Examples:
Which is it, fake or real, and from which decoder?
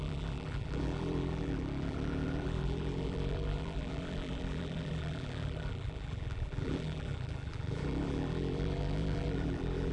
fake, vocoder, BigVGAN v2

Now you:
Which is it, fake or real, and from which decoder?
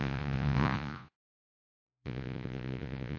fake, vocoder, Vocos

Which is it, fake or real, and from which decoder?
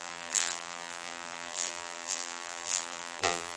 fake, vocoder, BigVGAN v2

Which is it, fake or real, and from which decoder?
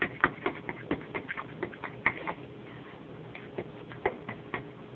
real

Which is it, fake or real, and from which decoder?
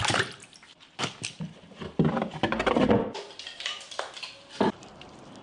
real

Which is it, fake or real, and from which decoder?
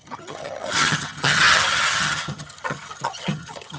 fake, vocoder, HiFi-GAN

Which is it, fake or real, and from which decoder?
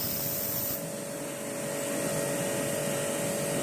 real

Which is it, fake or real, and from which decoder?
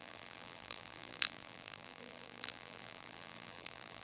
fake, vocoder, BigVGAN v2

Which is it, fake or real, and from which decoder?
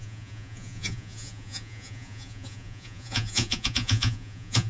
fake, vocoder, Vocos